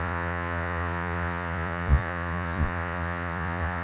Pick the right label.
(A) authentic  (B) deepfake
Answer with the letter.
B